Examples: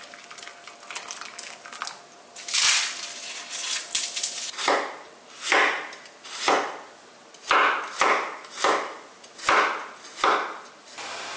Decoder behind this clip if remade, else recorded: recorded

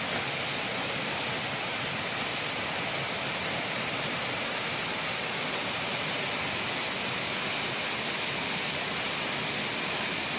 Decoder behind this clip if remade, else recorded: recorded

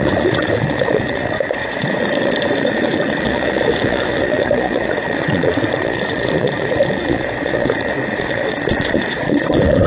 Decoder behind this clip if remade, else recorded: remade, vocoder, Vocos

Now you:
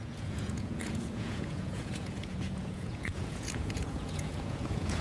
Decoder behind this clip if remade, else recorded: remade, vocoder, Vocos